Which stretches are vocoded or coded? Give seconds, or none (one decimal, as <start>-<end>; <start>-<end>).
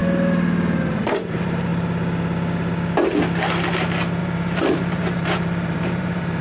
0.9-1.7; 4.2-6.4